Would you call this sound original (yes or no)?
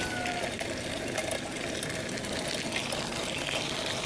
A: yes